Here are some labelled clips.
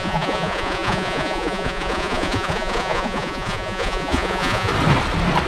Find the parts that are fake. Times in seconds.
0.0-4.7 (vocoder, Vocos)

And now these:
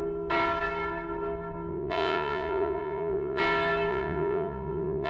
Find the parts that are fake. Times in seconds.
1.7-3.4 (vocoder, Vocos); 3.9-5.1

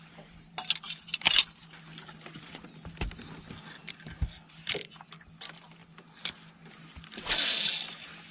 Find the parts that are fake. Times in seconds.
none